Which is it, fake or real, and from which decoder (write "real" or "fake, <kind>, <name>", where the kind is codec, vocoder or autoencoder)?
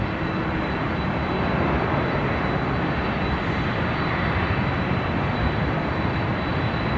real